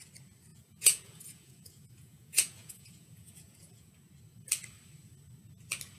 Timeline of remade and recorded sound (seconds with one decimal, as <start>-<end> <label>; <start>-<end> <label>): 0.0-0.5 recorded; 0.5-3.9 remade; 3.9-6.0 recorded